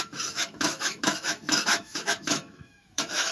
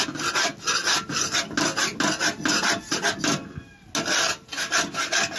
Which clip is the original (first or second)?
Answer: second